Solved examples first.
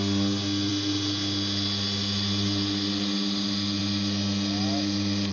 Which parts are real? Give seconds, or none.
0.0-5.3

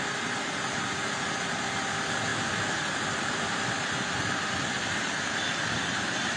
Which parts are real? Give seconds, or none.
0.0-6.4

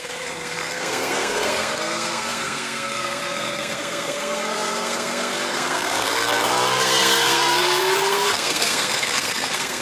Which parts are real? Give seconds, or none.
none

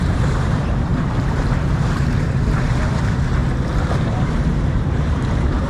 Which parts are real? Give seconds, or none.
3.4-3.9

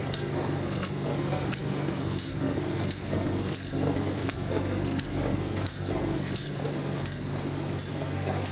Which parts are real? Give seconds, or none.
7.3-7.9

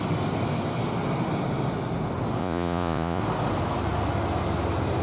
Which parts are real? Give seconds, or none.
0.0-2.4; 3.2-5.0

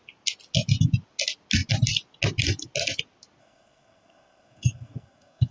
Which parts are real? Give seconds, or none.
0.0-3.4

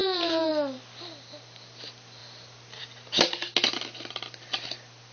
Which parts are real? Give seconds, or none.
0.5-5.1